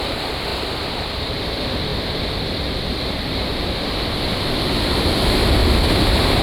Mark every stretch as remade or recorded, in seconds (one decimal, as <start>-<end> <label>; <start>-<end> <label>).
0.0-1.9 recorded; 1.9-3.7 remade; 3.7-5.6 recorded; 5.6-6.4 remade